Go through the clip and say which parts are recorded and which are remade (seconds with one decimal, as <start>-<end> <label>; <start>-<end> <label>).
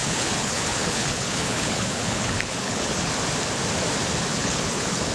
0.0-3.1 remade; 3.1-4.3 recorded; 4.3-5.1 remade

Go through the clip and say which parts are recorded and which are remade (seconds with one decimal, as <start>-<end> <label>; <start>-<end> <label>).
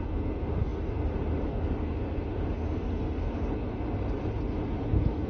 0.0-5.3 recorded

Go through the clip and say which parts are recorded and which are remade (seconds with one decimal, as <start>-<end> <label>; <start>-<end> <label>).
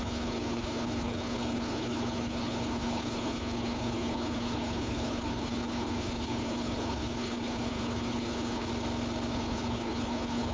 0.0-8.7 remade; 8.7-9.3 recorded; 9.3-10.5 remade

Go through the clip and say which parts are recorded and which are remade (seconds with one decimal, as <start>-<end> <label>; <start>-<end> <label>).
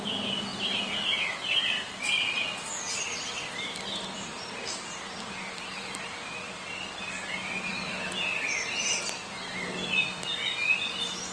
0.0-11.3 recorded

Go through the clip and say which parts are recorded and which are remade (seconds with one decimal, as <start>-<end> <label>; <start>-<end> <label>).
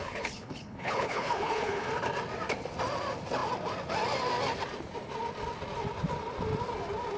0.0-1.9 remade; 1.9-7.2 recorded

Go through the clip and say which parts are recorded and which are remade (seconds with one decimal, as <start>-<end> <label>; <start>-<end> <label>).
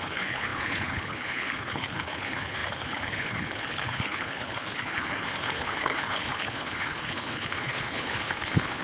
0.0-8.8 remade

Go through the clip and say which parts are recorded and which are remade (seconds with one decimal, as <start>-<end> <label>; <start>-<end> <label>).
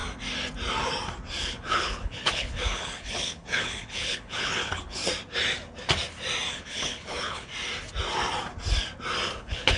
0.0-1.4 recorded; 1.4-5.0 remade; 5.0-6.5 recorded; 6.5-7.5 remade; 7.5-9.4 recorded; 9.4-9.8 remade